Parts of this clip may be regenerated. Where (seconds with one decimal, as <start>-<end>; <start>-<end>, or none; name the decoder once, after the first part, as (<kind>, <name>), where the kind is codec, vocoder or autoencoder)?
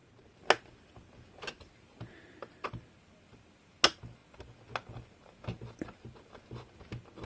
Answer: none